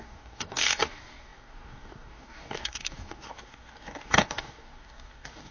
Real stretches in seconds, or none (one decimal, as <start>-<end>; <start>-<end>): none